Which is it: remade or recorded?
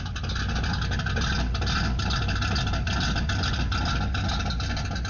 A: recorded